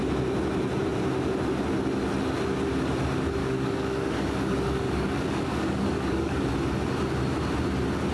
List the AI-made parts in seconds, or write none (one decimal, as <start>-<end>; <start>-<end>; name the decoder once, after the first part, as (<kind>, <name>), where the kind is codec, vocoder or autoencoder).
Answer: 3.4-6.5 (codec, DAC)